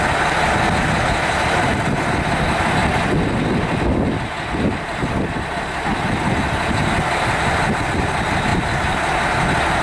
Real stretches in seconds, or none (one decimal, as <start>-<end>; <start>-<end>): 0.0-9.8